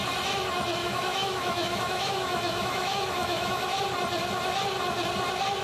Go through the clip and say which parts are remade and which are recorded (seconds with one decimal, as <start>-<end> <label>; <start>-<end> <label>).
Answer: 0.0-0.8 recorded; 0.8-3.8 remade; 3.8-5.6 recorded